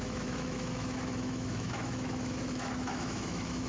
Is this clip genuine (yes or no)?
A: no